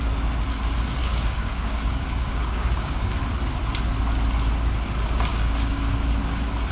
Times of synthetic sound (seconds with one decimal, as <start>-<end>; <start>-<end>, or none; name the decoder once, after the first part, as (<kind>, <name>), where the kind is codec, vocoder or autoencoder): 1.0-3.2 (codec, DAC); 5.3-5.9